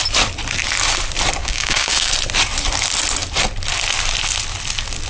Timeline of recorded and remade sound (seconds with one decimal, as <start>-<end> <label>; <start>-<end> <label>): 0.0-1.4 recorded; 1.4-2.1 remade; 2.1-5.1 recorded